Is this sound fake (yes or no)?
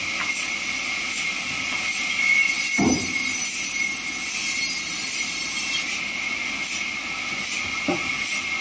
yes